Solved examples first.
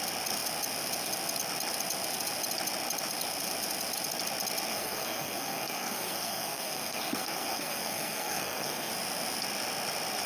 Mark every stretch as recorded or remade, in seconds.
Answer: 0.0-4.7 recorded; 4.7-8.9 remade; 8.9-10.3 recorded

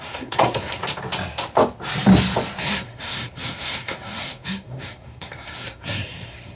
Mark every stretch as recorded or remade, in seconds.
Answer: 0.0-0.8 remade; 0.8-2.6 recorded; 2.6-6.6 remade

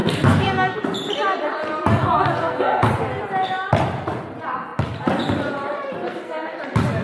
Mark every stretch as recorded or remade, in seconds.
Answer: 0.0-0.8 remade; 0.8-1.9 recorded; 1.9-2.9 remade; 2.9-6.1 recorded; 6.1-6.6 remade; 6.6-7.0 recorded

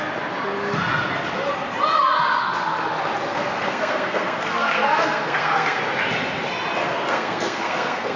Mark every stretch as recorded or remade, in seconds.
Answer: 0.0-3.3 recorded; 3.3-5.8 remade; 5.8-6.8 recorded; 6.8-8.2 remade

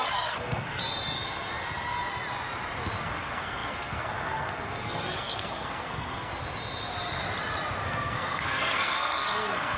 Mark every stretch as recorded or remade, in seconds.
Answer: 0.0-0.8 remade; 0.8-3.0 recorded; 3.0-6.3 remade; 6.3-7.8 recorded; 7.8-9.8 remade